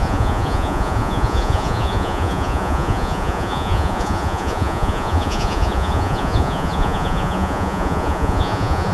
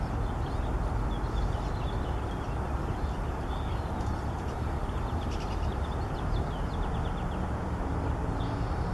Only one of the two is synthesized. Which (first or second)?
first